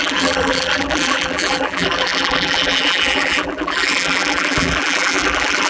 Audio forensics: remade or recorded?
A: remade